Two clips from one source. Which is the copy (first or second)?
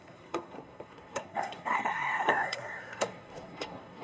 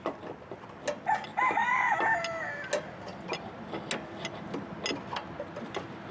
first